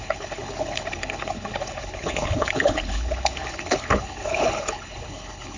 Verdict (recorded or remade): remade